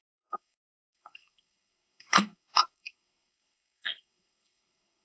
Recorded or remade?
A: remade